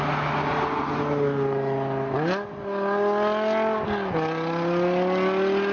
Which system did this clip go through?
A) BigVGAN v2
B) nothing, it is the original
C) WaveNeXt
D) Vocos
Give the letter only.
B